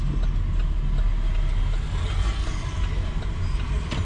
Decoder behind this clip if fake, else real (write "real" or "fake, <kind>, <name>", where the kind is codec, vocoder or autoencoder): real